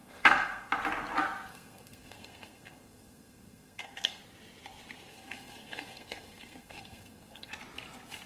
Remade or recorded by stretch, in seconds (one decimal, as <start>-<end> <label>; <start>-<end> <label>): 0.0-0.7 remade; 0.7-1.5 recorded; 1.5-4.2 remade; 4.2-5.1 recorded; 5.1-7.5 remade; 7.5-8.3 recorded